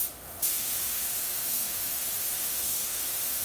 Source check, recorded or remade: remade